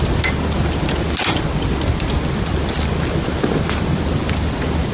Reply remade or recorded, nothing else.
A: recorded